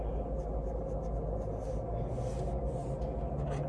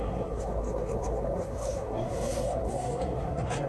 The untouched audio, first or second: first